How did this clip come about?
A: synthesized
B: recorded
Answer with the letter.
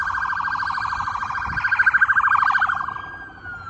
B